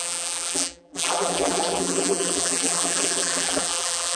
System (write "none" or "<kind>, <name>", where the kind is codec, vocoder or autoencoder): vocoder, BigVGAN v2